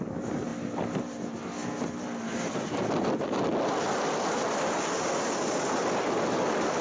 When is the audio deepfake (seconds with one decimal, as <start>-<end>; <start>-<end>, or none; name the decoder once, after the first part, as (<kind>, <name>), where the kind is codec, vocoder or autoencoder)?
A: none